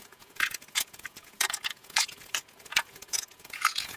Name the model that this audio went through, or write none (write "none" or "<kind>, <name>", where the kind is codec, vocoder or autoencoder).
vocoder, Vocos